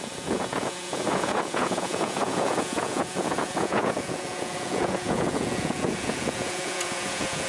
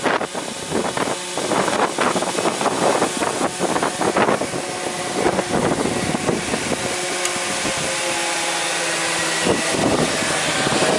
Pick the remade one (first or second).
first